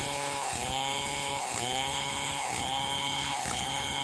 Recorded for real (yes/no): no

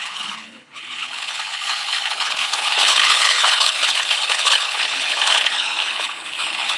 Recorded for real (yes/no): no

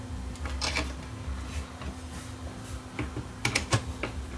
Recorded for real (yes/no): yes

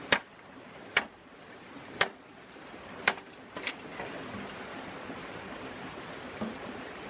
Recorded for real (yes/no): yes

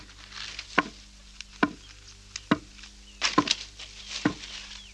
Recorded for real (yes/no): yes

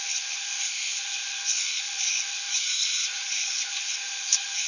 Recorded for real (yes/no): no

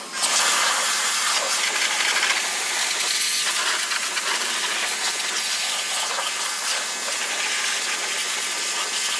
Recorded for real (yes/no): yes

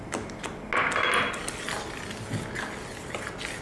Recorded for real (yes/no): yes